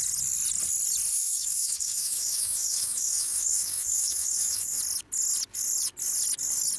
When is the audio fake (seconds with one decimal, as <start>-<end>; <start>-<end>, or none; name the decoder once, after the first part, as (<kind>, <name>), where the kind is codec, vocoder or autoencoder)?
1.1-4.8 (autoencoder, DAC-VAE)